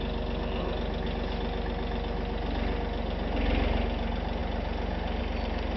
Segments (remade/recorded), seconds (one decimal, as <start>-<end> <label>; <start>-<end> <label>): 0.0-5.8 recorded